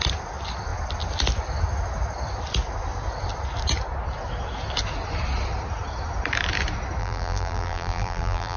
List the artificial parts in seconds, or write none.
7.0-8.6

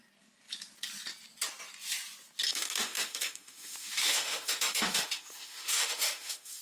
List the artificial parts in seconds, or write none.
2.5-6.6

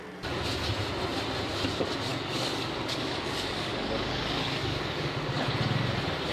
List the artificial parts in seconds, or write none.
2.1-5.4

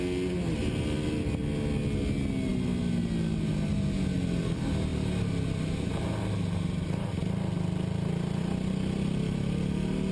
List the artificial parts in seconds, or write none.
none

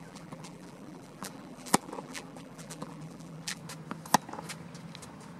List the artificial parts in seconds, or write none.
0.0-3.6